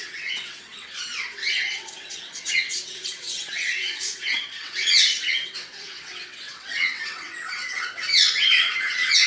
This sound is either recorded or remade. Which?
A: remade